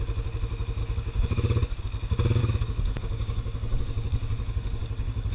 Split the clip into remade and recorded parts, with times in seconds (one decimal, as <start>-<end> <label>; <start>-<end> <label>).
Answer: 0.0-0.8 recorded; 0.8-1.8 remade; 1.8-2.4 recorded; 2.4-5.3 remade